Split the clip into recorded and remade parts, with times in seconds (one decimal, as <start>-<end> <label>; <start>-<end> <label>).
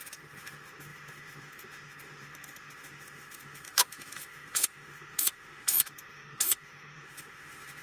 0.0-7.8 remade